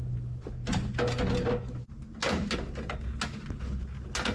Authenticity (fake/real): real